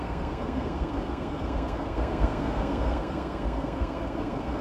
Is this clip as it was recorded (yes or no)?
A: no